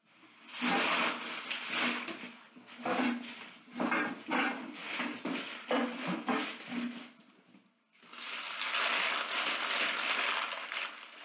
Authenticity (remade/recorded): recorded